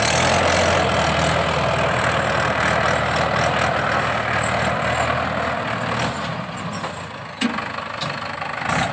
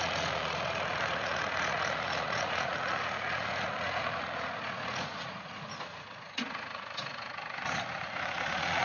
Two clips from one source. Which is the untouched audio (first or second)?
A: first